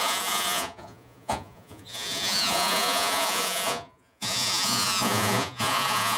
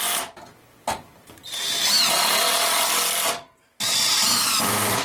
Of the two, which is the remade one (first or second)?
first